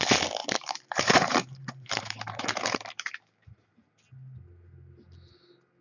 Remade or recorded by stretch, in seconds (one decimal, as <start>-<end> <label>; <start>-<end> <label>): 0.0-0.4 recorded; 0.4-3.9 remade; 3.9-5.8 recorded